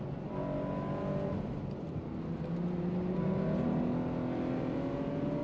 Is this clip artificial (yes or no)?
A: no